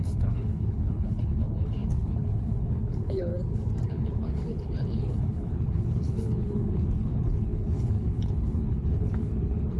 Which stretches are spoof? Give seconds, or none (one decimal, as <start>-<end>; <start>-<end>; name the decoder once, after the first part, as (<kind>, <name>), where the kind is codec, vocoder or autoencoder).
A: 0.0-3.3 (codec, HILCodec); 3.9-9.8